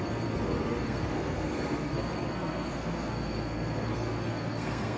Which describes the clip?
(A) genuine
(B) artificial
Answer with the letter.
B